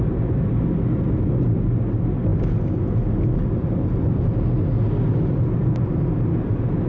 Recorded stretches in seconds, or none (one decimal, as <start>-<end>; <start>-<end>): 0.0-6.9